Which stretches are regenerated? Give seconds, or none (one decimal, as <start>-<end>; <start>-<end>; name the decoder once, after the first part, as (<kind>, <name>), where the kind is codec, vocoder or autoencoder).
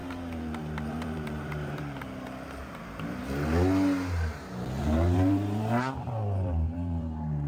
0.0-3.2 (vocoder, BigVGAN v2); 4.8-7.5